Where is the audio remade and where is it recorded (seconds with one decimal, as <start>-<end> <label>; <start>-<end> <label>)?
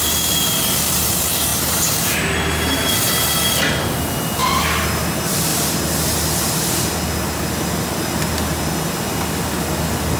0.0-10.2 recorded